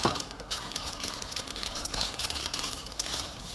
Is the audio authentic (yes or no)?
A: no